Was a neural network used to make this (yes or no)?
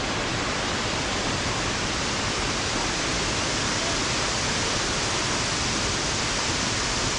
yes